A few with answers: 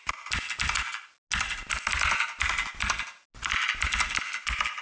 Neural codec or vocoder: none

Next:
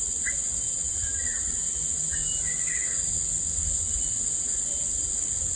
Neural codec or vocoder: none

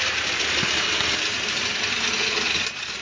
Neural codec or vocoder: none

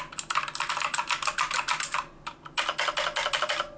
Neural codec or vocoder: none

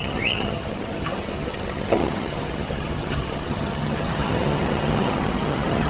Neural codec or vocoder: vocoder, HiFi-GAN